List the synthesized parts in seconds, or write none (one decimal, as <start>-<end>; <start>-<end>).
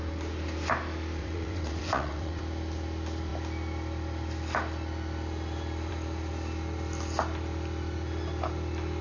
1.2-2.4